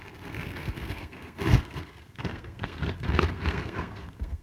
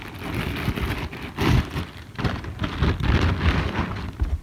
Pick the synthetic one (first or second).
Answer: first